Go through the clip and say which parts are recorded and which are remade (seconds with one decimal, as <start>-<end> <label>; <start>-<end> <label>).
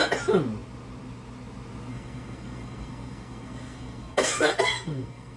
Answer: 0.0-1.9 recorded; 1.9-5.4 remade